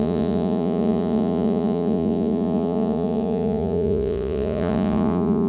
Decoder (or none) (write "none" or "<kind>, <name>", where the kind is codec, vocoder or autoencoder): vocoder, Vocos